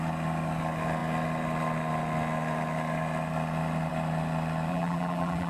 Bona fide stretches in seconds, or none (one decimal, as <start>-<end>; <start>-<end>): 0.0-4.7